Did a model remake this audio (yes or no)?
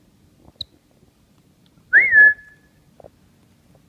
no